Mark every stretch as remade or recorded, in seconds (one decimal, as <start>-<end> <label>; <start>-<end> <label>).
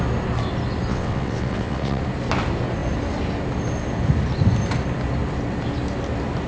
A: 0.0-0.9 recorded; 0.9-2.0 remade; 2.0-6.5 recorded